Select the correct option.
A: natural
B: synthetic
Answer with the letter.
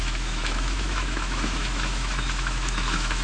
B